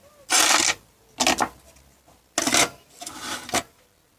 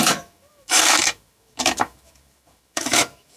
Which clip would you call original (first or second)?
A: first